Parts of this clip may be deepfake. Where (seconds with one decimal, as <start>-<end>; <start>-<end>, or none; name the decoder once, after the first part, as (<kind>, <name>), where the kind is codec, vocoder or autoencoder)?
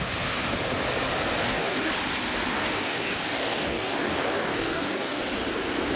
1.4-1.9 (codec, DAC); 2.5-5.2